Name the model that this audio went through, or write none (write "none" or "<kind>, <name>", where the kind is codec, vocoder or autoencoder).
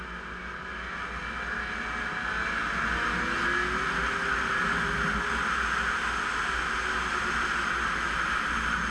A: none